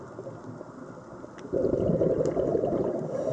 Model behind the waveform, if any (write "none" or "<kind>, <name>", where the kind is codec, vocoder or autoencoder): none